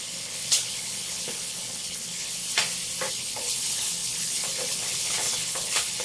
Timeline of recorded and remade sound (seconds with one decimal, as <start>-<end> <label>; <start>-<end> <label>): 0.0-2.4 remade; 2.4-3.1 recorded; 3.1-6.0 remade